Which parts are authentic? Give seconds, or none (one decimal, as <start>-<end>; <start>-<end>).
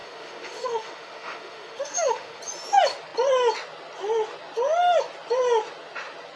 2.4-6.4